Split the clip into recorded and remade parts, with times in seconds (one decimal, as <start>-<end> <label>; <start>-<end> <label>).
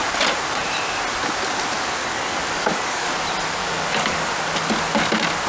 0.0-2.0 recorded; 2.0-3.1 remade; 3.1-3.6 recorded; 3.6-4.3 remade; 4.3-5.5 recorded